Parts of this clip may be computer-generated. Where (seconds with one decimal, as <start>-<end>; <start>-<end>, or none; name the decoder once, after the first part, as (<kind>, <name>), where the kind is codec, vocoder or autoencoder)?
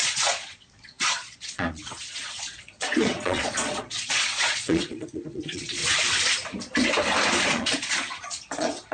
0.0-5.8 (vocoder, Vocos); 7.5-8.9